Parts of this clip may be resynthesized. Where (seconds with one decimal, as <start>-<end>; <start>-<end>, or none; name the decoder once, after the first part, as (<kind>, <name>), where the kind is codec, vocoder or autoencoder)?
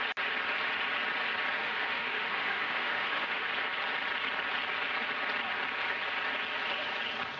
1.6-3.5 (autoencoder, DAC-VAE)